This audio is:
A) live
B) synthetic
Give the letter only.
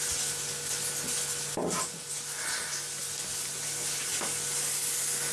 A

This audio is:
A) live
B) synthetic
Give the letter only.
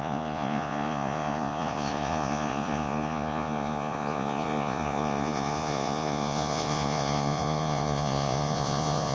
B